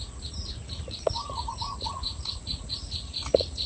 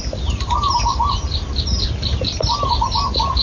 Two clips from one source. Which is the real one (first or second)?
second